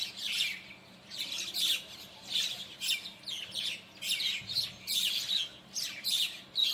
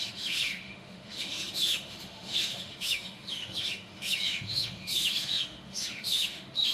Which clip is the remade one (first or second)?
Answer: second